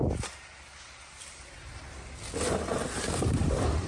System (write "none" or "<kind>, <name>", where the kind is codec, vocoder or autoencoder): none